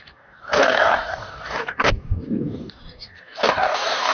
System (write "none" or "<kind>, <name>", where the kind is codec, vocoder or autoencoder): codec, DAC